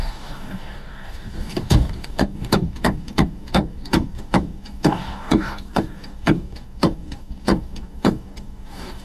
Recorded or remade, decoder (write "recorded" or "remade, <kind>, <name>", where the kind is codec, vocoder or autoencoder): remade, codec, DAC